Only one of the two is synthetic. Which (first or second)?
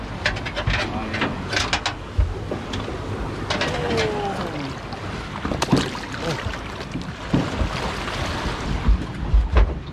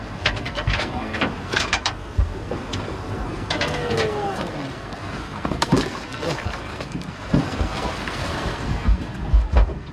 second